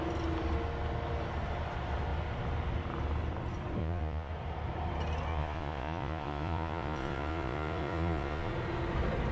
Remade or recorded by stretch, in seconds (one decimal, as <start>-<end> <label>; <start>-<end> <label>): 0.0-3.8 recorded; 3.8-4.3 remade; 4.3-5.3 recorded; 5.3-8.5 remade; 8.5-9.3 recorded